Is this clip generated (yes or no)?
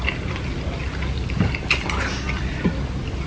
no